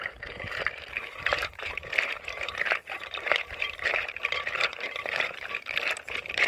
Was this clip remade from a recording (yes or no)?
yes